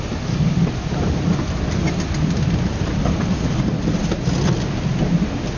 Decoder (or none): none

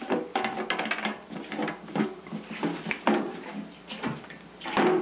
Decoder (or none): vocoder, BigVGAN v2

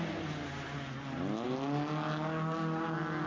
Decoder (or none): none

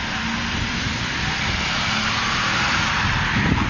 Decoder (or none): none